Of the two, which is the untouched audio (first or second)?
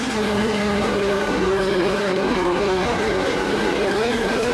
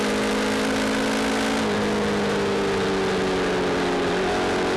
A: second